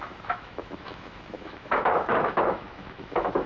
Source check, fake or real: fake